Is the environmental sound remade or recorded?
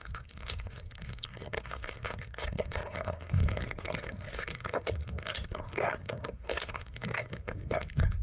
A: remade